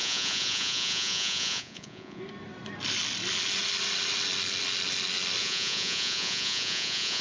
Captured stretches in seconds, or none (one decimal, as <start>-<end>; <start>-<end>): 2.2-5.4